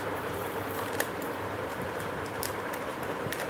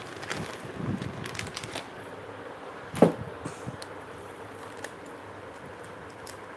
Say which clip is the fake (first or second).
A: first